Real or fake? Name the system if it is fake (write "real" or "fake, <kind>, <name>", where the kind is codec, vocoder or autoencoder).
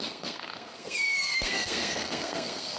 fake, codec, SNAC